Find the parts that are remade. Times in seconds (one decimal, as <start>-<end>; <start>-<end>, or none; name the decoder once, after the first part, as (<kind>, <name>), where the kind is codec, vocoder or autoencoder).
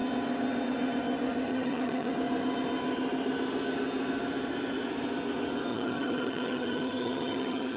1.5-2.1 (vocoder, HiFi-GAN); 5.7-7.8